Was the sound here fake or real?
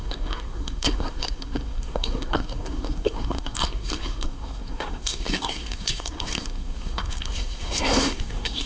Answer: fake